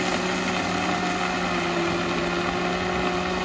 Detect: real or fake real